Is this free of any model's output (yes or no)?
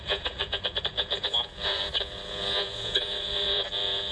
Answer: no